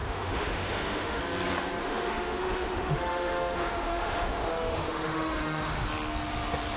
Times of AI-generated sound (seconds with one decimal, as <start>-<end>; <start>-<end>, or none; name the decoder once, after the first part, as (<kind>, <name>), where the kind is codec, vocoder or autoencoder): 0.0-1.2 (autoencoder, DAC-VAE); 1.8-5.9

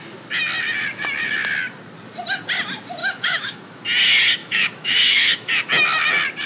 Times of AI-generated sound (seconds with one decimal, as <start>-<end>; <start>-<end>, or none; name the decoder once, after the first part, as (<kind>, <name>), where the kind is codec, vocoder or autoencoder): 3.0-3.8 (autoencoder, DAC-VAE); 4.4-5.5

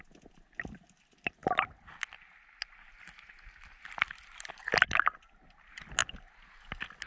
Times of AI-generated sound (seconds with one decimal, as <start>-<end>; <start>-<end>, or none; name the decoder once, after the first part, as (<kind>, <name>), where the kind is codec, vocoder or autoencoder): none

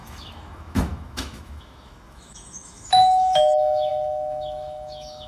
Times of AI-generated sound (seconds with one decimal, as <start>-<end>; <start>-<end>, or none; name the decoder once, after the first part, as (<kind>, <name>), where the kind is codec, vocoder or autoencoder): 0.0-5.3 (autoencoder, DAC-VAE)

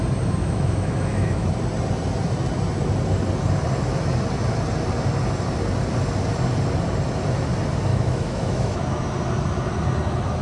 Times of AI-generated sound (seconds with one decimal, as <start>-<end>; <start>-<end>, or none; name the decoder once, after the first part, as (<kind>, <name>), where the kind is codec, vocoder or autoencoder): 0.4-1.5 (autoencoder, DAC-VAE); 7.9-8.8

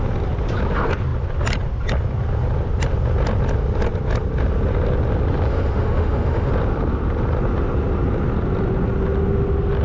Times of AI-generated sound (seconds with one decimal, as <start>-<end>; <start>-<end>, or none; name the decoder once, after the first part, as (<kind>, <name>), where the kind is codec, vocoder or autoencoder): 5.5-6.5 (autoencoder, DAC-VAE)